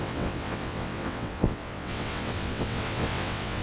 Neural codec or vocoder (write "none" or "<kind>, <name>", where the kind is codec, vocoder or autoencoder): vocoder, WaveNeXt